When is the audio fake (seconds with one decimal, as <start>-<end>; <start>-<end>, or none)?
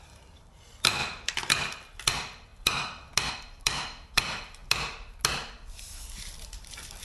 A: 0.0-1.0; 1.5-2.5; 3.3-4.6; 5.7-7.0